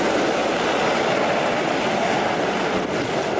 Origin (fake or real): real